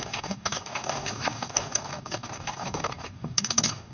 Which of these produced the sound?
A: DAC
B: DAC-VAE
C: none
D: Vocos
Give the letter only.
A